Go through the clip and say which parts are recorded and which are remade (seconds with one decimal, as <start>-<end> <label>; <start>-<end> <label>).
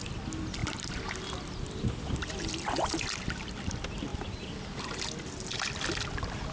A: 0.0-0.6 recorded; 0.6-3.0 remade; 3.0-4.1 recorded; 4.1-5.1 remade; 5.1-6.5 recorded